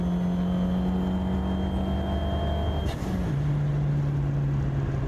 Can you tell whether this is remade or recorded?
recorded